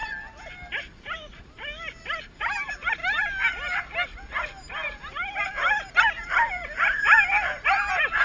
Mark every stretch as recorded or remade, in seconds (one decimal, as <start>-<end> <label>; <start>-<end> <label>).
0.0-8.2 recorded